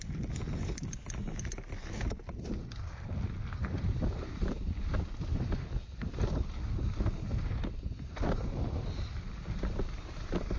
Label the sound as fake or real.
real